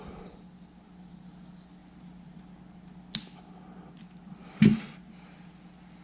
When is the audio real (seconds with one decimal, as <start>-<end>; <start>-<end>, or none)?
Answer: 0.0-6.0

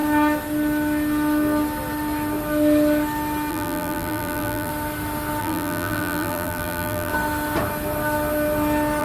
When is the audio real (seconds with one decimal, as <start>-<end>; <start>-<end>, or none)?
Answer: 0.0-3.5; 4.7-5.4; 7.1-9.0

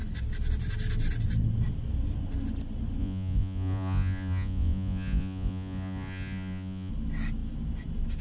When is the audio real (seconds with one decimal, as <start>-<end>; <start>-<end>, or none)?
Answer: 0.0-3.0; 6.9-8.2

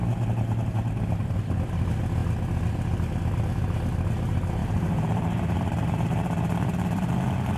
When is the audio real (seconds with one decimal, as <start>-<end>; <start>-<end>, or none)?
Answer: 0.0-4.6; 7.1-7.6

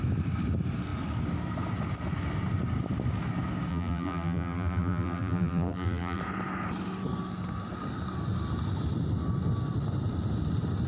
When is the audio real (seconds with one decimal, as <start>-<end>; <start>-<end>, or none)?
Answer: 0.0-3.7; 6.2-10.9

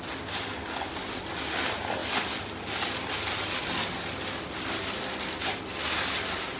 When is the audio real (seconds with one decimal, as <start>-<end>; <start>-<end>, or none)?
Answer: 0.0-6.6